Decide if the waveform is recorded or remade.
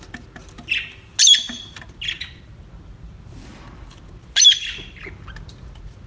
recorded